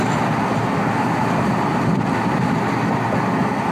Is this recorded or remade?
recorded